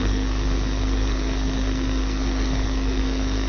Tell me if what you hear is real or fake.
fake